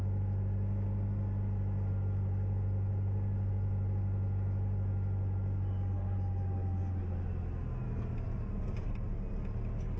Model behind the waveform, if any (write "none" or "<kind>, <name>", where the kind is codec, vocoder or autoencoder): none